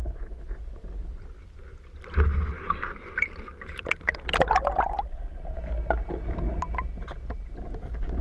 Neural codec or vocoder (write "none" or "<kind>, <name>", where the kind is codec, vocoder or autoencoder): none